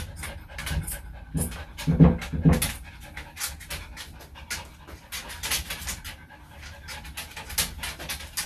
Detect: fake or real real